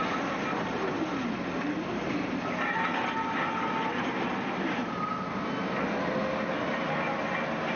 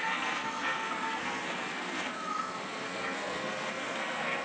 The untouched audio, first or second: first